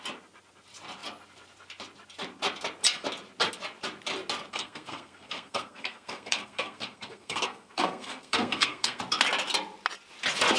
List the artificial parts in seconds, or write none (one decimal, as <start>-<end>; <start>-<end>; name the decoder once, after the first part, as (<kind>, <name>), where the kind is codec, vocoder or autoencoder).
4.5-9.0 (codec, SNAC)